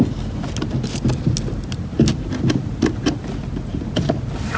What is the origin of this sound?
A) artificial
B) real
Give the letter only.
B